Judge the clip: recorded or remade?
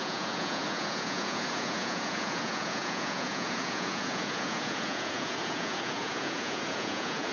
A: remade